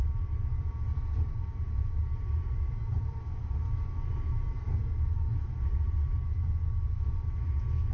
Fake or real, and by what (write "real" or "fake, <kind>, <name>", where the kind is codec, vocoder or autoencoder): real